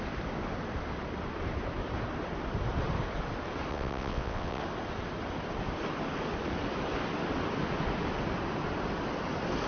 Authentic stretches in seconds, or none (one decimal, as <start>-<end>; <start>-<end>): 0.0-3.7; 4.6-9.7